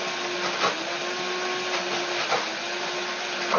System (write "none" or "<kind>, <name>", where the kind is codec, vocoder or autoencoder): none